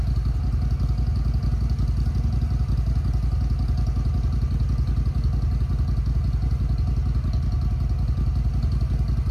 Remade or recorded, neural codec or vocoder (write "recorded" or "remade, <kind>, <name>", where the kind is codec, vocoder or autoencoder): recorded